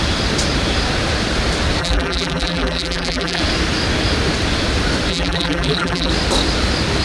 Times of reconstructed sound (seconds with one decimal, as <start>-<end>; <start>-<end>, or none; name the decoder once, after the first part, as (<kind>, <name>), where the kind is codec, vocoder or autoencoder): 1.8-3.4 (vocoder, BigVGAN v2); 5.1-6.1